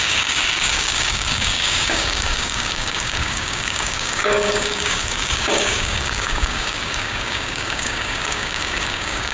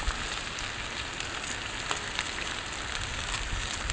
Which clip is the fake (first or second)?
first